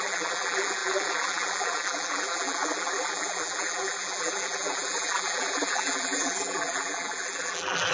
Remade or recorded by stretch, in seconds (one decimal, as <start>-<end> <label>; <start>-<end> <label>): 0.0-7.9 remade